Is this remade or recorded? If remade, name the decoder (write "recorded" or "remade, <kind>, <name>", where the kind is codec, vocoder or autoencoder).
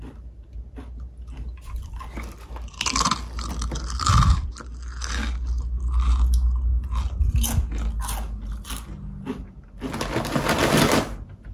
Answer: recorded